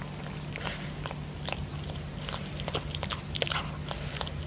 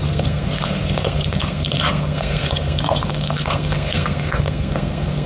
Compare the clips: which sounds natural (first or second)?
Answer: first